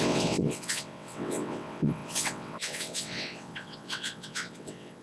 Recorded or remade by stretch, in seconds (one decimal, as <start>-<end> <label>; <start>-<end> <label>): 0.0-5.0 remade